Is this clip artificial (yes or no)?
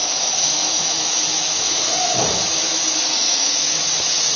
yes